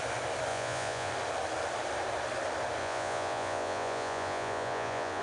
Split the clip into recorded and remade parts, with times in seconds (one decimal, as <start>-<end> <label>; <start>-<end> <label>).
0.0-0.5 recorded; 0.5-1.1 remade; 1.1-2.8 recorded; 2.8-5.2 remade